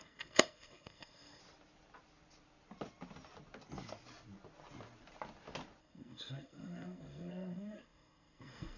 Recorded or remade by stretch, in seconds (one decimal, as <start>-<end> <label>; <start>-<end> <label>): 0.0-1.4 remade; 1.4-5.8 recorded; 5.8-8.8 remade